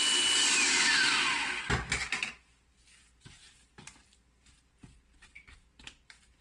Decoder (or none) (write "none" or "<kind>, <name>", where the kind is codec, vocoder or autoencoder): none